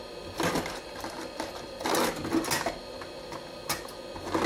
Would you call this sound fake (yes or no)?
no